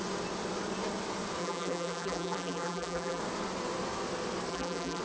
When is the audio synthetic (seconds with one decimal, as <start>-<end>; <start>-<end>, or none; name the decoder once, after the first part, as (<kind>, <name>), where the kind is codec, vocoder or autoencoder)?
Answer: 1.4-3.2 (vocoder, BigVGAN v2); 4.5-5.0

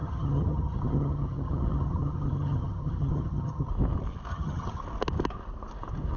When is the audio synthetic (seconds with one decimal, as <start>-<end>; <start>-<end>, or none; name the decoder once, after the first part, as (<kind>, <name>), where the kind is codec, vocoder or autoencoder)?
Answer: 0.0-3.7 (vocoder, HiFi-GAN); 4.3-4.8

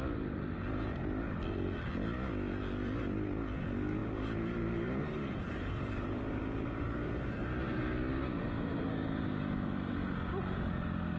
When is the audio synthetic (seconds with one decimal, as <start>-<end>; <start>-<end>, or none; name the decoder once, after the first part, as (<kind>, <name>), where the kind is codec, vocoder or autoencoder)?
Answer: 4.0-7.8 (vocoder, BigVGAN v2)

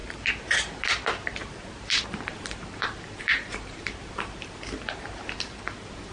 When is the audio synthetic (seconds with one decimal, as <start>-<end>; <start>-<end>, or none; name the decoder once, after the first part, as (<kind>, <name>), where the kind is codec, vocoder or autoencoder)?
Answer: 0.0-6.1 (vocoder, BigVGAN v2)

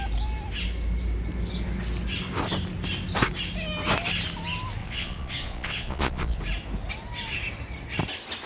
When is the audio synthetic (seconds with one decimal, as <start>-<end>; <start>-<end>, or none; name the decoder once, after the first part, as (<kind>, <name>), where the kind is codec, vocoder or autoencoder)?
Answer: 4.8-6.4 (vocoder, Vocos)

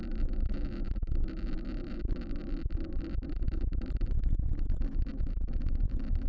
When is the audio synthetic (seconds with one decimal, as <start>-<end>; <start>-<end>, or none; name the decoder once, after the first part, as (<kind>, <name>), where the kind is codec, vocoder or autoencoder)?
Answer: none

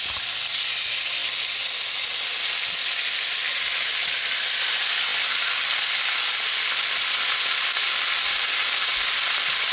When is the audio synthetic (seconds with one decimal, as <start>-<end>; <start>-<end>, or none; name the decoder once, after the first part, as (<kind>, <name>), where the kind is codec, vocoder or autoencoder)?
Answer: none